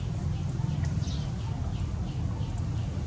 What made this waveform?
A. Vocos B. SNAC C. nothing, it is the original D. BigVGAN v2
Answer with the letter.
C